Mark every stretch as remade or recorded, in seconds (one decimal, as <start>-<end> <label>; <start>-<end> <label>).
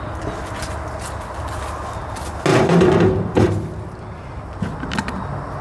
0.0-2.5 recorded; 2.5-3.5 remade; 3.5-5.6 recorded